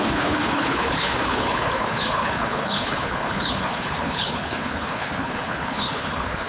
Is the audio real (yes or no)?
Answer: no